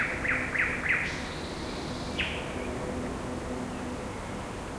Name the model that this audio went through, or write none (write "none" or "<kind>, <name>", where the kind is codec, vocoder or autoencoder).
none